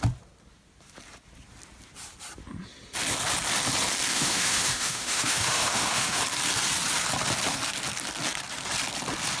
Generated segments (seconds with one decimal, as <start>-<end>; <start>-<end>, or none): 4.1-6.2